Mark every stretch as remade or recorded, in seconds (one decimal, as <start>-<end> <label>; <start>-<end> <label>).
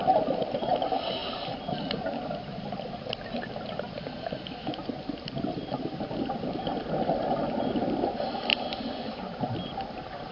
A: 0.0-6.7 recorded; 6.7-7.8 remade; 7.8-8.5 recorded; 8.5-9.4 remade; 9.4-10.3 recorded